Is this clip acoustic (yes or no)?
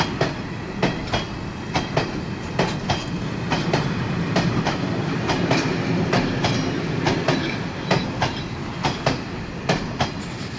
yes